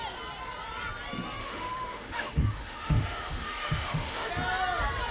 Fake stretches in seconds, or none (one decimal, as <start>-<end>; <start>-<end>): 1.4-4.3